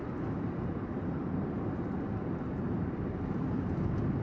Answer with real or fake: fake